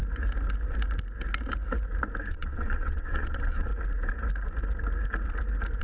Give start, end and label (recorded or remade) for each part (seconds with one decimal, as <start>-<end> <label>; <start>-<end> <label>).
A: 0.0-2.3 recorded; 2.3-3.7 remade; 3.7-5.8 recorded